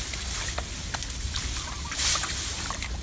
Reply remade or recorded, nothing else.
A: recorded